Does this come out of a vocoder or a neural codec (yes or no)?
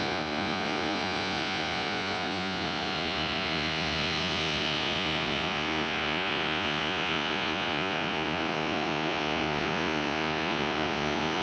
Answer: yes